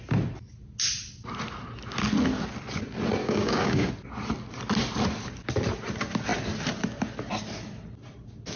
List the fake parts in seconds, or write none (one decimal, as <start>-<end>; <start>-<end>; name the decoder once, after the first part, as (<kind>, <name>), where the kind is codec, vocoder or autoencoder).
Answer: 3.2-3.9 (codec, DAC)